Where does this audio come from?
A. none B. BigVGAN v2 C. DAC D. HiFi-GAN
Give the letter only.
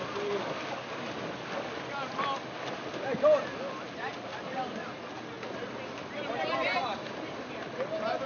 A